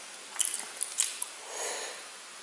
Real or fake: real